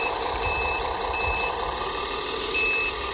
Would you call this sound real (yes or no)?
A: yes